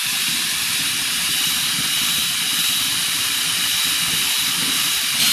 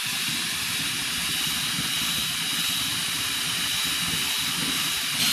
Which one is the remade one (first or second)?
first